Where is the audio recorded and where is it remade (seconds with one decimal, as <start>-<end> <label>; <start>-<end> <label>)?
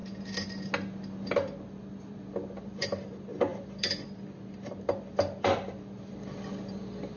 0.0-2.1 recorded; 2.1-7.2 remade